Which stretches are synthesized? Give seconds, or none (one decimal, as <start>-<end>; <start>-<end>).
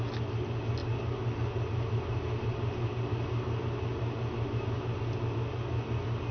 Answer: none